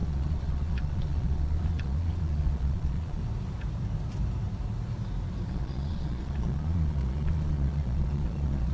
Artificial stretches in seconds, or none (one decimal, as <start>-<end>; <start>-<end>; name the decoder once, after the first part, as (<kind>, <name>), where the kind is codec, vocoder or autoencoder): 0.0-3.2 (vocoder, Vocos); 5.5-8.7